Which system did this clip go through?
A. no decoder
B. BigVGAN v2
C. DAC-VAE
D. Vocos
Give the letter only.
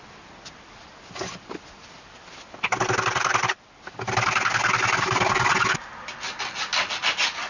A